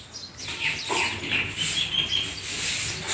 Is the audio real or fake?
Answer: real